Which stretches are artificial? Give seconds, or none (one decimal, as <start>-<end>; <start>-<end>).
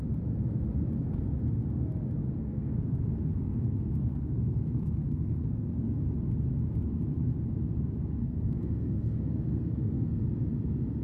2.2-6.0; 8.2-10.2